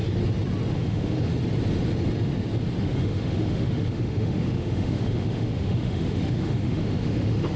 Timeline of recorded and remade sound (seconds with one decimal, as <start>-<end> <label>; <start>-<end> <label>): 0.0-0.7 recorded; 0.7-1.3 remade; 1.3-2.8 recorded; 2.8-7.6 remade